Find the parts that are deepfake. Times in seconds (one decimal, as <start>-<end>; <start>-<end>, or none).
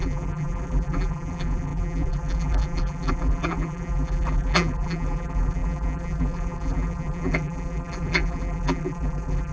0.0-9.5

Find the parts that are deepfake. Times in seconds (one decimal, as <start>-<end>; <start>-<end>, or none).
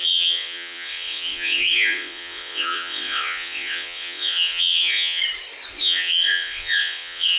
0.0-5.2; 5.8-7.4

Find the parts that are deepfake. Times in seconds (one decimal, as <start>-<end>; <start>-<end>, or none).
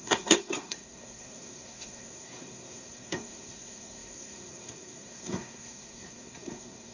0.0-6.9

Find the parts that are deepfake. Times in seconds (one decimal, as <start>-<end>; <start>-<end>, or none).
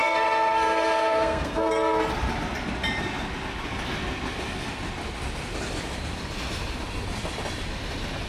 0.0-1.7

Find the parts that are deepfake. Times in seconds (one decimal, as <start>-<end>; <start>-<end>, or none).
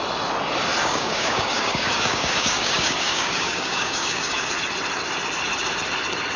0.8-4.5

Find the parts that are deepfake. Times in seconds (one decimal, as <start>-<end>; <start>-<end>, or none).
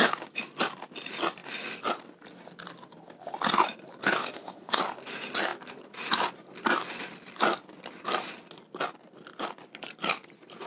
4.2-4.8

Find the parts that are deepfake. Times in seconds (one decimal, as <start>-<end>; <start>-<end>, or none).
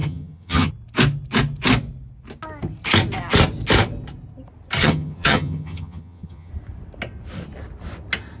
0.0-0.7; 4.8-6.5